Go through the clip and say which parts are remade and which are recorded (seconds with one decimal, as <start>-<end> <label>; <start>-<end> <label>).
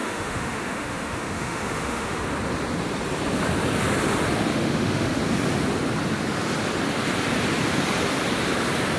0.0-2.2 remade; 2.2-4.5 recorded; 4.5-5.2 remade; 5.2-9.0 recorded